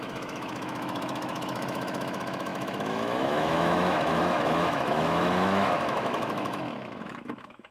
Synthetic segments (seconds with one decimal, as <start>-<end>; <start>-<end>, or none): 0.0-7.7